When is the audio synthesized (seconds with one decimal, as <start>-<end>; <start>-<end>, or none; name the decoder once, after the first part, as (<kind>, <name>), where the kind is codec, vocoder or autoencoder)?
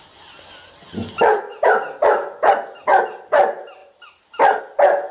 none